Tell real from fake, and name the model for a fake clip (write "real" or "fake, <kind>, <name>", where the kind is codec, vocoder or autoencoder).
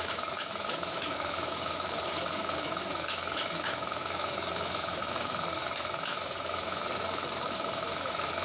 fake, autoencoder, DAC-VAE